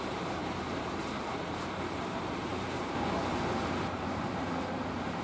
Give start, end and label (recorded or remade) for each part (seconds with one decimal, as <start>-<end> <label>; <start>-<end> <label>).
0.0-2.5 remade; 2.5-3.4 recorded; 3.4-5.2 remade

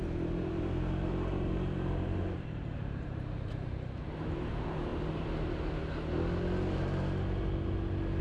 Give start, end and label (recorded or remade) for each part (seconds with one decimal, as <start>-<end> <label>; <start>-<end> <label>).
0.0-4.9 remade; 4.9-8.2 recorded

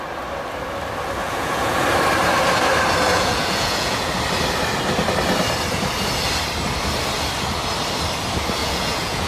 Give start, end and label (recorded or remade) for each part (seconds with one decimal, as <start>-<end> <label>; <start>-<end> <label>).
0.0-1.2 recorded; 1.2-1.8 remade; 1.8-3.1 recorded; 3.1-4.1 remade; 4.1-8.6 recorded; 8.6-9.3 remade

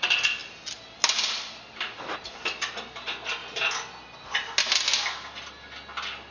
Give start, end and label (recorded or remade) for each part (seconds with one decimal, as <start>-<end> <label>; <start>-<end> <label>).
0.0-6.3 recorded